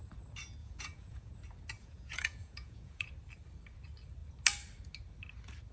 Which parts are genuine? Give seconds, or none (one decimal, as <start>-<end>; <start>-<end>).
0.0-0.6; 1.3-1.8; 3.1-5.7